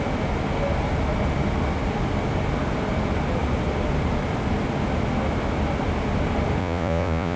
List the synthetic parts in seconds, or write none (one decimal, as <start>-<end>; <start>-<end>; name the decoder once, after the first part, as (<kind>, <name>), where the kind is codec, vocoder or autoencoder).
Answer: 6.6-7.4 (vocoder, Vocos)